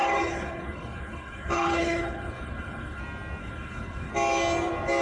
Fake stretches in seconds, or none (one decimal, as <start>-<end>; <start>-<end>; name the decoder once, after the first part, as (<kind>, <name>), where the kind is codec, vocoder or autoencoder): 0.0-3.0 (codec, HILCodec); 3.4-4.1